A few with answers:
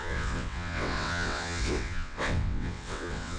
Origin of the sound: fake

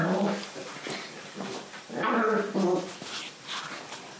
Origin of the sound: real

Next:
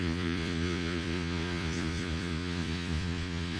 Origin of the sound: fake